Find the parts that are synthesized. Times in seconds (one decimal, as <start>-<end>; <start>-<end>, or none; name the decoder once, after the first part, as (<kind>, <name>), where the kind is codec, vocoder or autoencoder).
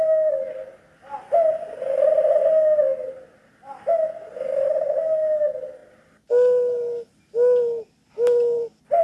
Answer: none